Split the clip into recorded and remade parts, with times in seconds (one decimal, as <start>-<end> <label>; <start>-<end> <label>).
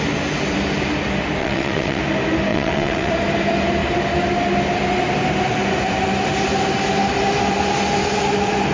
0.0-1.4 recorded; 1.4-2.0 remade; 2.0-2.5 recorded; 2.5-3.1 remade; 3.1-8.7 recorded